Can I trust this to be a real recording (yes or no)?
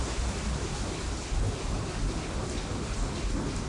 yes